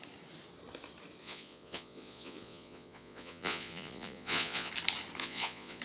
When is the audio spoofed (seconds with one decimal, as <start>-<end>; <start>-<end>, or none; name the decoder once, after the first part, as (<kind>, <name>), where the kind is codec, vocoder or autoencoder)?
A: 1.2-4.7 (vocoder, Vocos); 5.2-5.8